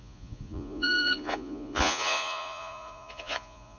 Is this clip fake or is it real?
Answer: fake